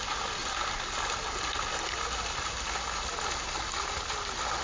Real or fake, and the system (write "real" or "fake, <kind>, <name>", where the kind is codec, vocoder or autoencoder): real